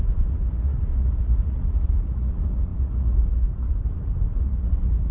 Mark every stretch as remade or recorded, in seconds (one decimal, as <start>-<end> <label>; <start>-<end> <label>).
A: 0.0-5.1 remade